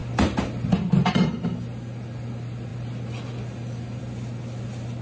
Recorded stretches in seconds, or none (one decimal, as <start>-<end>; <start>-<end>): 0.0-5.0

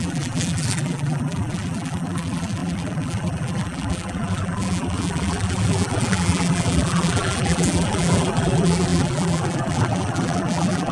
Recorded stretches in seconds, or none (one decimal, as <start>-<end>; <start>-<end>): none

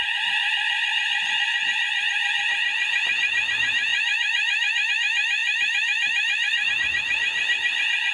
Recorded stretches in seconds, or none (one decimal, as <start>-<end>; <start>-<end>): 0.0-5.4; 6.7-8.1

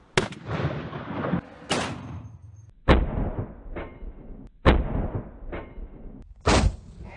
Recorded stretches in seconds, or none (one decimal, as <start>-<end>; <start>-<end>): 0.0-7.2